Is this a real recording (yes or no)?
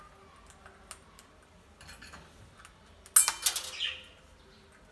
yes